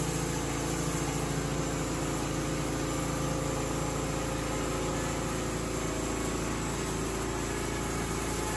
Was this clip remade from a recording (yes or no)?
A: no